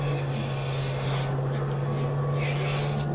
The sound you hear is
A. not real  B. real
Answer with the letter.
B